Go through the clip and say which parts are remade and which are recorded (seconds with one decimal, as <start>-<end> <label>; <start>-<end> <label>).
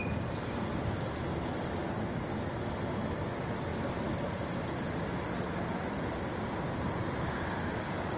0.0-8.2 recorded